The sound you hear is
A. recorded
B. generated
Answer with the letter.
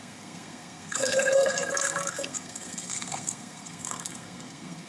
B